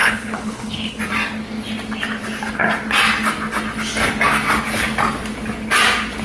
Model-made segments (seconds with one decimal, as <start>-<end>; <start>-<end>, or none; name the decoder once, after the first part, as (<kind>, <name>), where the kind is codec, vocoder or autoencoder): 0.0-1.0 (codec, HILCodec)